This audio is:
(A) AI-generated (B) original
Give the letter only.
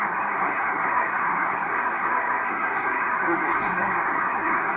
A